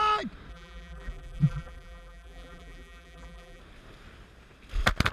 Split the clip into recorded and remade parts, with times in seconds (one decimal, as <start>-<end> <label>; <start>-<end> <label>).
0.0-0.5 recorded; 0.5-3.6 remade; 3.6-5.1 recorded